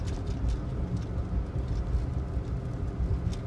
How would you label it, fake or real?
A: real